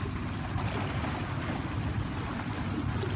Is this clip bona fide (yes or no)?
yes